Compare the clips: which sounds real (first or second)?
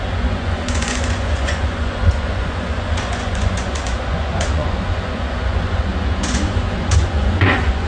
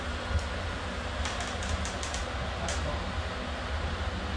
second